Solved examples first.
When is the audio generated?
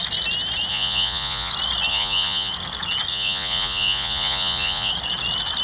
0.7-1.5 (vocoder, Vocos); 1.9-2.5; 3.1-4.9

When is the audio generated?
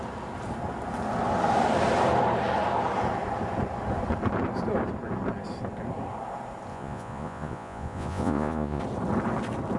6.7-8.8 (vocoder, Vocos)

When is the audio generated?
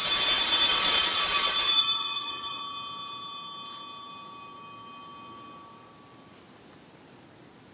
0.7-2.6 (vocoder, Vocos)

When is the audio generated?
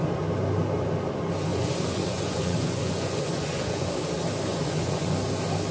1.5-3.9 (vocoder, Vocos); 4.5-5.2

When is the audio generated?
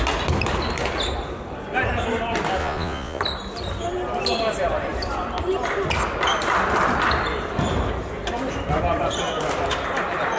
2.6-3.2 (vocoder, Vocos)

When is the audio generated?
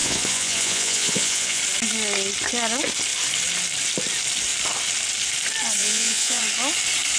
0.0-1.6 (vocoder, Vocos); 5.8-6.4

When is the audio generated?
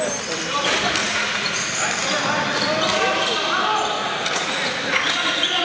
1.0-1.7 (vocoder, Vocos); 4.0-5.6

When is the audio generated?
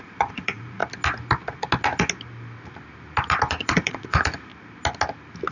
0.0-0.8 (vocoder, Vocos); 3.5-4.5